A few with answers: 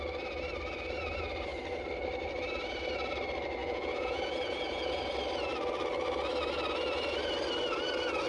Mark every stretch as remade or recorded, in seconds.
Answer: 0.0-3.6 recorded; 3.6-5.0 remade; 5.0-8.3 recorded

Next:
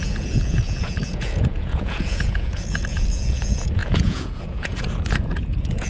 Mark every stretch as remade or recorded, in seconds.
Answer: 0.0-5.9 remade

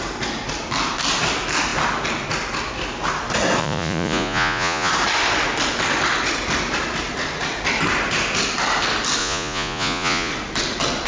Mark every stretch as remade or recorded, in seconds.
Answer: 0.0-3.6 recorded; 3.6-4.9 remade; 4.9-9.2 recorded; 9.2-10.3 remade; 10.3-11.1 recorded

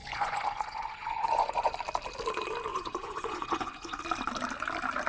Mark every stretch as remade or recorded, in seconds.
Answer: 0.0-1.7 remade; 1.7-2.7 recorded; 2.7-4.0 remade; 4.0-5.1 recorded

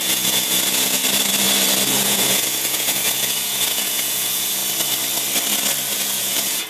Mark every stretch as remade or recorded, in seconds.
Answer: 0.0-1.0 remade; 1.0-1.9 recorded; 1.9-4.6 remade; 4.6-5.9 recorded; 5.9-6.7 remade

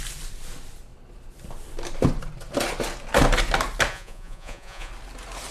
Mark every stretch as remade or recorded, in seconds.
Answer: 0.0-3.9 recorded; 3.9-4.9 remade; 4.9-5.5 recorded

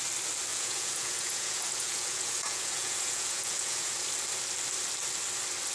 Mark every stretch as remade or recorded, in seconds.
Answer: 0.0-0.5 recorded; 0.5-3.9 remade; 3.9-5.7 recorded

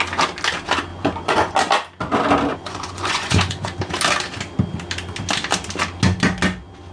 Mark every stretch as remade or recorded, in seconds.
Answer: 0.0-0.9 recorded; 0.9-1.5 remade; 1.5-2.5 recorded; 2.5-3.8 remade; 3.8-6.9 recorded